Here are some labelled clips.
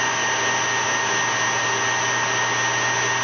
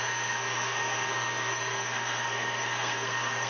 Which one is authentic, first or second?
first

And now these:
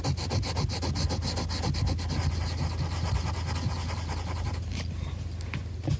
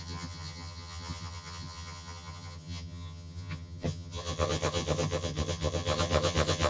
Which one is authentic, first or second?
first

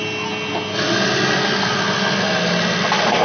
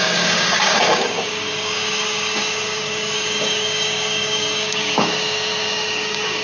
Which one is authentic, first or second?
first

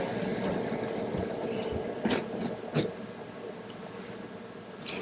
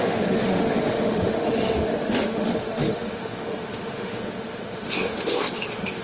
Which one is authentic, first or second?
first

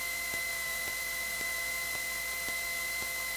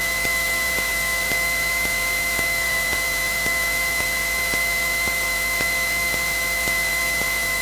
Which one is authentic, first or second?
first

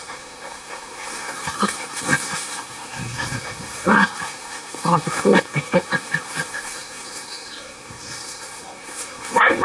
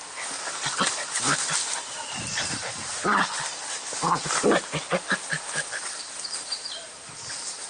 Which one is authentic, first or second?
second